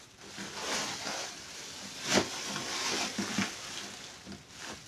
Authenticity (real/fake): real